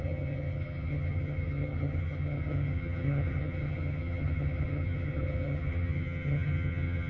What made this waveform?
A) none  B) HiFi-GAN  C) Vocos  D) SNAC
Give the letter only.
B